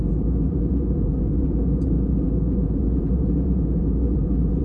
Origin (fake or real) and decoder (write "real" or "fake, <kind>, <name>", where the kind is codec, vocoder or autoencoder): fake, vocoder, Vocos